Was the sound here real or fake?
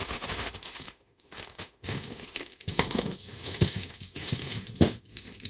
fake